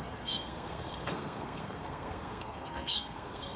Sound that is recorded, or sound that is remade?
remade